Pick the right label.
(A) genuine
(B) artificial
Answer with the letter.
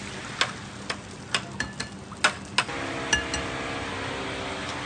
A